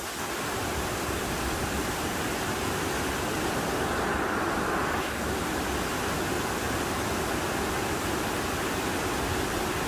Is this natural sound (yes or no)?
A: yes